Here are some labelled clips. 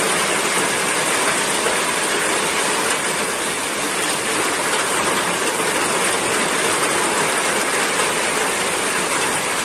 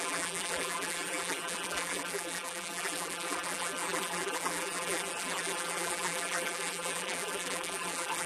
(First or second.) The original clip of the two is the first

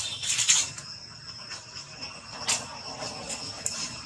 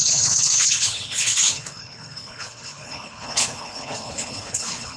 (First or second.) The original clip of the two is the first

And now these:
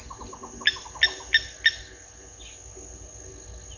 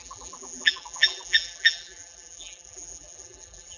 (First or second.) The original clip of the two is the first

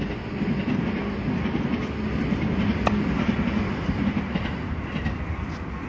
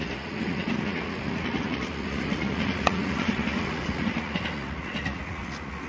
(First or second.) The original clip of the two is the first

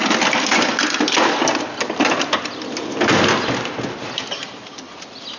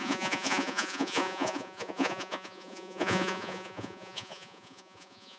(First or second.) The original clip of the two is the first